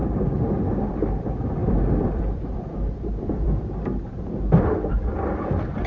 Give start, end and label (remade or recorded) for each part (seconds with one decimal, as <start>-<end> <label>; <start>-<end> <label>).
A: 0.0-0.9 recorded; 0.9-5.9 remade